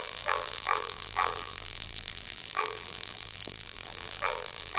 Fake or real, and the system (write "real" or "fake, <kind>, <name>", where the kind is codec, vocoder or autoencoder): fake, vocoder, BigVGAN v2